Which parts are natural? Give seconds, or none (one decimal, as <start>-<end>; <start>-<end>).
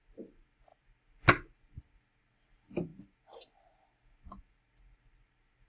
0.0-5.7